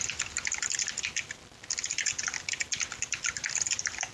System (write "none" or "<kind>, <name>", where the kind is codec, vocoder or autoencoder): none